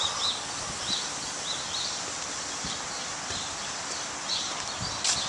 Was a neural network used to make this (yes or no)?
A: no